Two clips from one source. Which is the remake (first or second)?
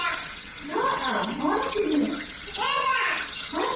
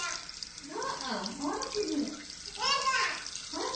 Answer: first